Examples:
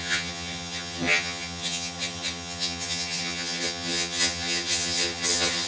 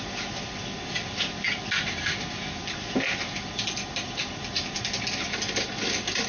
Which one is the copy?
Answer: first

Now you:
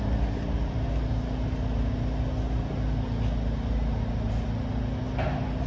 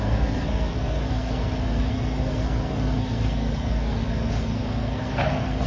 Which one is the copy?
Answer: second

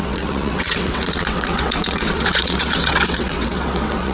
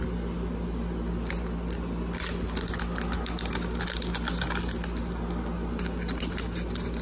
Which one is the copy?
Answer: first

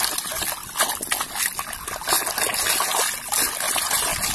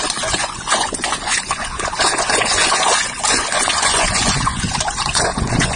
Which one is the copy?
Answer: second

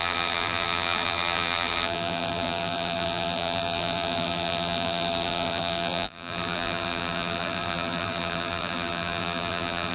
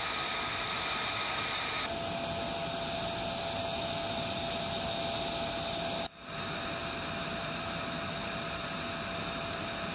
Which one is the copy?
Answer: first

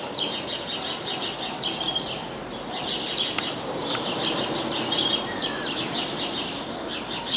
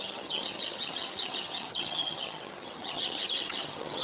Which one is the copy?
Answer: second